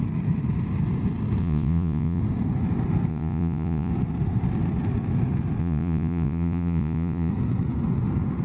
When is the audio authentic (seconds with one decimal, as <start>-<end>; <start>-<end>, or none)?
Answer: 0.0-1.4; 2.2-3.1; 3.9-5.6; 7.3-8.4